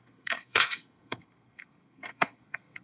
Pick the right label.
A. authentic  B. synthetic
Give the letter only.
B